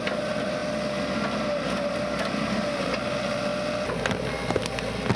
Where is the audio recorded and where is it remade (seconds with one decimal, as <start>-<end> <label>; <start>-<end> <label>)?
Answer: 0.0-0.6 remade; 0.6-2.8 recorded; 2.8-3.5 remade; 3.5-5.2 recorded